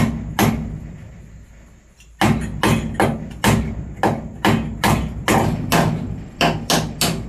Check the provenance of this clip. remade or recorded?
recorded